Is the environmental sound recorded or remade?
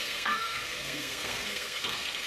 remade